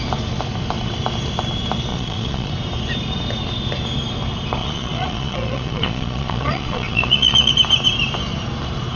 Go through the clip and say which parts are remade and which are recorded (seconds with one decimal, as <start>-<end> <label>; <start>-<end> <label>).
0.0-1.9 recorded; 1.9-2.5 remade; 2.5-4.6 recorded; 4.6-7.5 remade; 7.5-9.0 recorded